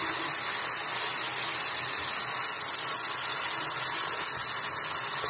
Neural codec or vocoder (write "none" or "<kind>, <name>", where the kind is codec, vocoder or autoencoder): none